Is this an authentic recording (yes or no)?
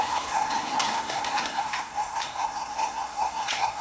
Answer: no